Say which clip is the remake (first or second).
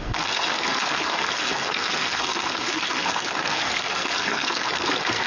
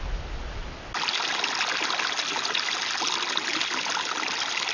first